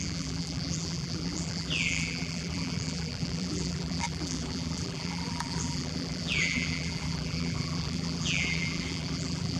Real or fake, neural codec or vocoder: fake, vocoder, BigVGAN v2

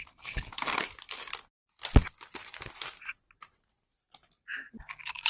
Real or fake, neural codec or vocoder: real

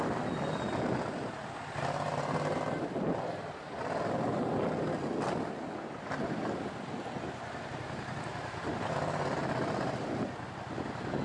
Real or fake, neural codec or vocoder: real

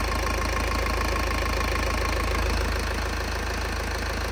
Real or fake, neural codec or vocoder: real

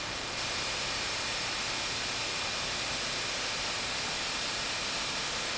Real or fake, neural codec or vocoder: real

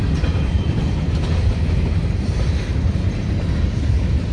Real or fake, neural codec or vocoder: fake, vocoder, BigVGAN v2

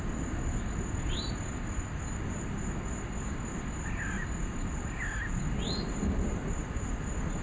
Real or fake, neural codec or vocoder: real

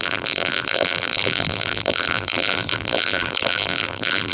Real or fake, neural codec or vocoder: fake, vocoder, BigVGAN v2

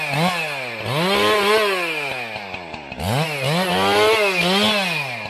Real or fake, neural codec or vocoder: real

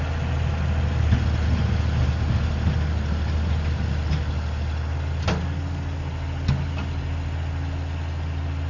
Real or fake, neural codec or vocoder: real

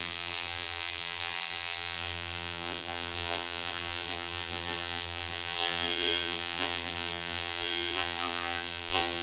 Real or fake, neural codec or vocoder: fake, vocoder, BigVGAN v2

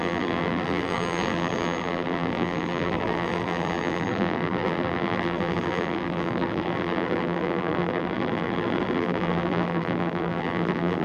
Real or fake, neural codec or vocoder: fake, vocoder, BigVGAN v2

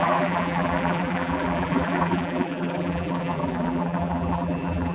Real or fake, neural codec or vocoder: fake, vocoder, BigVGAN v2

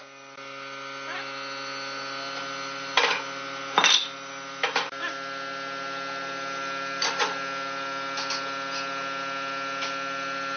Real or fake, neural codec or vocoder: real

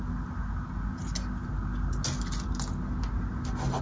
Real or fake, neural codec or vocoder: real